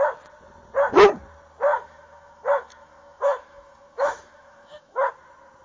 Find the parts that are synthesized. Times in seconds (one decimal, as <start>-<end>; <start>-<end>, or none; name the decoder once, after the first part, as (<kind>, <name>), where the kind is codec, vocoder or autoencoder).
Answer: 1.7-5.1 (autoencoder, DAC-VAE)